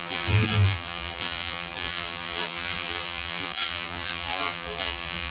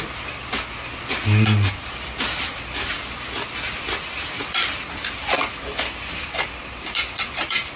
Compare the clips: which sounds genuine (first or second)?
second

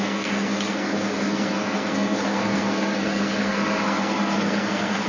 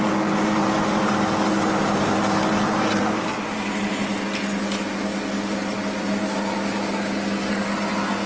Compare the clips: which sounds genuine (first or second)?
second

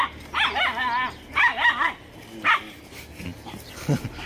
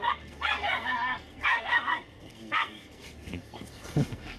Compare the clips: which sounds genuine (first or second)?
first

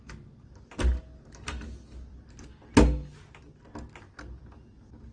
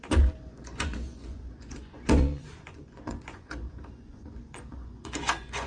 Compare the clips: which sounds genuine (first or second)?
first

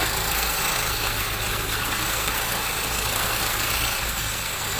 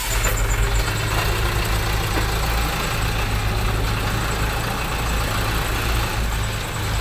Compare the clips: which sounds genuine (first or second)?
second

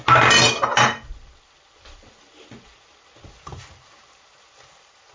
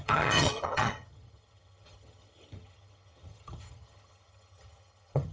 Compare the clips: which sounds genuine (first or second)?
first